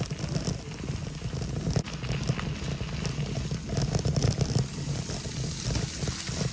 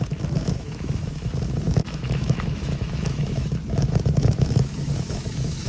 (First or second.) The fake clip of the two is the second